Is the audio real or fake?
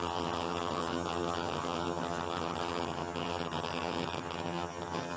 fake